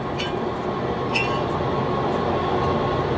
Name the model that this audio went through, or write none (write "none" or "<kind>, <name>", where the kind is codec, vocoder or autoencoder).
none